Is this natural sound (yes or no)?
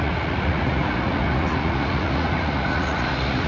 no